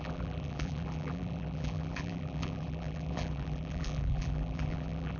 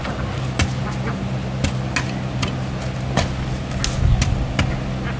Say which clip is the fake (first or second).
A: first